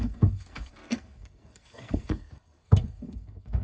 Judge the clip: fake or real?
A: fake